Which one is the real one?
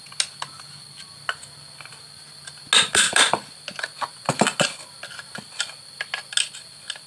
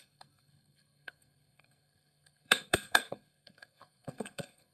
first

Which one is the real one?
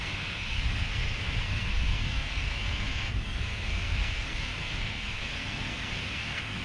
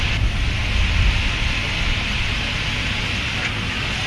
second